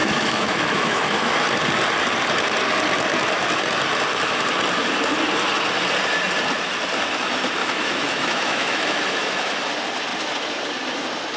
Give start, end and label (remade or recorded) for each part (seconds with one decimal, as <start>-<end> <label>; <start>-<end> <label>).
0.0-1.4 remade; 1.4-7.6 recorded; 7.6-9.7 remade; 9.7-11.4 recorded